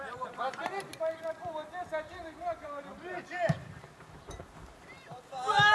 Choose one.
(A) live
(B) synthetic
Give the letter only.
B